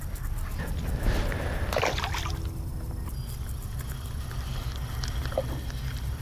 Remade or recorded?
recorded